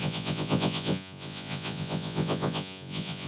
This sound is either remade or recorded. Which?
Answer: remade